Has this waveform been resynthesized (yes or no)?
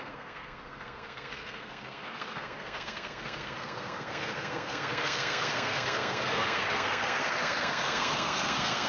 yes